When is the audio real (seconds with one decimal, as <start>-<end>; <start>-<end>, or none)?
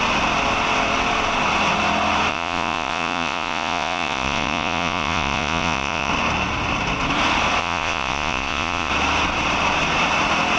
0.0-2.3; 6.1-7.6; 8.9-10.6